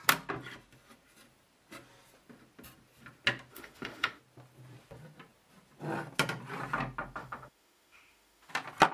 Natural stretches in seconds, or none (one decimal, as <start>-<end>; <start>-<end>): 0.0-3.5; 4.2-7.2; 8.5-8.9

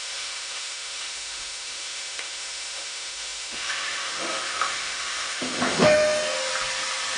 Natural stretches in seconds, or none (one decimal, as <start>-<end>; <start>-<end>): 6.5-7.2